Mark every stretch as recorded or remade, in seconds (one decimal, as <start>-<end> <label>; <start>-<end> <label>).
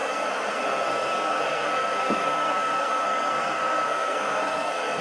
0.0-5.0 remade